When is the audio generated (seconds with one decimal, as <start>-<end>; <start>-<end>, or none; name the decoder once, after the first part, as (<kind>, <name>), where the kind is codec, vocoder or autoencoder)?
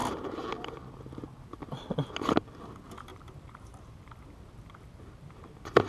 3.1-3.8 (vocoder, BigVGAN v2)